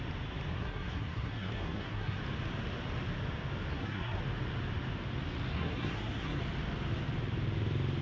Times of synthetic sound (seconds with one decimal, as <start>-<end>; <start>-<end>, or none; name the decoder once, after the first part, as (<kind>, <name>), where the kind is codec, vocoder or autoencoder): 0.5-2.2 (codec, SNAC); 3.7-4.2; 5.5-6.4